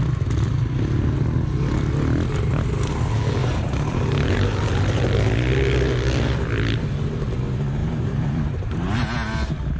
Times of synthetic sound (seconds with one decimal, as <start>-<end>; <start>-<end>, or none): 3.4-5.0; 7.8-9.0